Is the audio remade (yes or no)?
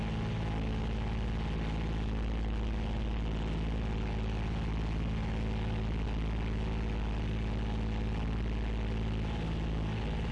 no